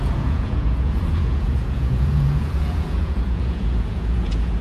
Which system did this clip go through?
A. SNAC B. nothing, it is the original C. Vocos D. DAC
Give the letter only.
C